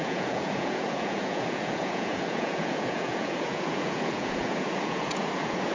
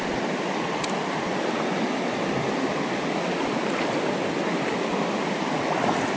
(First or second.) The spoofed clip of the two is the first